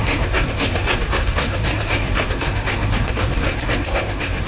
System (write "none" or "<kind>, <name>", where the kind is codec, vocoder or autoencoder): codec, SNAC